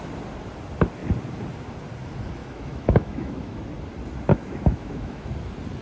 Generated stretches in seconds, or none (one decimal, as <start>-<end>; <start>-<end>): 2.4-3.6; 4.3-5.3